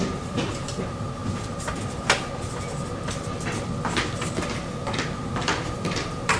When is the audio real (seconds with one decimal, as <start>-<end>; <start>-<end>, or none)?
1.2-5.0